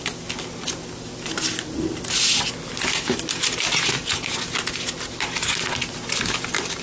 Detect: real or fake real